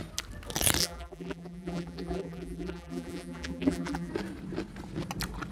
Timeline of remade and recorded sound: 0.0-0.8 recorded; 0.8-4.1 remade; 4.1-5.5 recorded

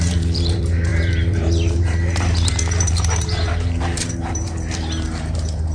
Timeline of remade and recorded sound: 0.0-5.7 remade

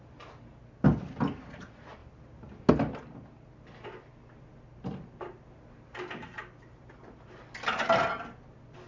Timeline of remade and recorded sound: 0.0-8.9 recorded

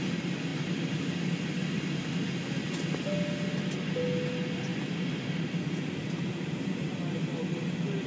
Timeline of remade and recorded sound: 0.0-0.5 recorded; 0.5-2.1 remade; 2.1-4.7 recorded; 4.7-6.9 remade; 6.9-8.1 recorded

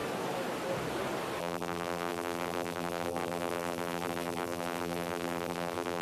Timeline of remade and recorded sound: 0.0-1.4 recorded; 1.4-6.0 remade

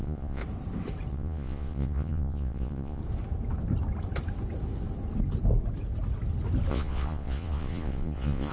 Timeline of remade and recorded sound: 0.0-0.4 remade; 0.4-1.1 recorded; 1.1-3.0 remade; 3.0-6.7 recorded; 6.7-8.5 remade

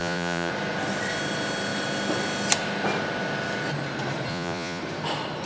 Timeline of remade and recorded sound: 0.0-0.5 remade; 0.5-4.3 recorded; 4.3-4.8 remade; 4.8-5.5 recorded

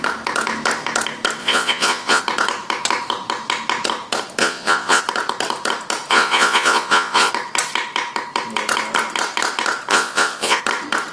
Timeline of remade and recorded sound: 0.0-1.4 recorded; 1.4-2.2 remade; 2.2-4.4 recorded; 4.4-5.0 remade; 5.0-6.1 recorded; 6.1-7.3 remade; 7.3-9.9 recorded; 9.9-10.6 remade; 10.6-11.1 recorded